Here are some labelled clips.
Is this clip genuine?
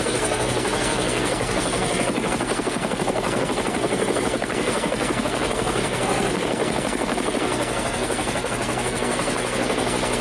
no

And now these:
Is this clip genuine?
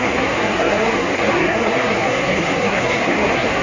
no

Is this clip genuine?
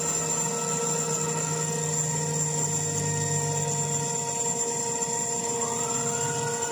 yes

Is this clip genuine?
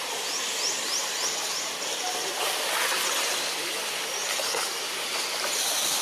yes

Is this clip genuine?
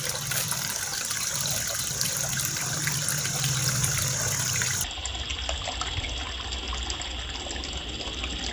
yes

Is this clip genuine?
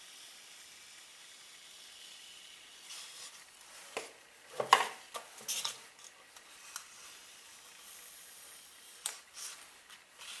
yes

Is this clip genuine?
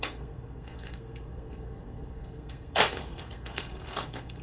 no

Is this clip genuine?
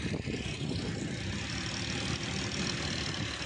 yes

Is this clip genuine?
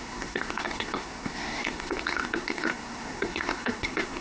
no